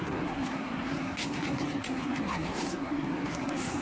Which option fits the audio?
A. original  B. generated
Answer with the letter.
B